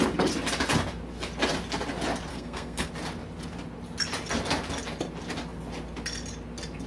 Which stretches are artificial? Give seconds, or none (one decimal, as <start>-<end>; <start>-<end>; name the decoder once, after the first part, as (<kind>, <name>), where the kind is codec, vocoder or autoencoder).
2.3-2.9 (codec, SNAC)